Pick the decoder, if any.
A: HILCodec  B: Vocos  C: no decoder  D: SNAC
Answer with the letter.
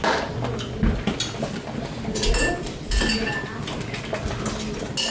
C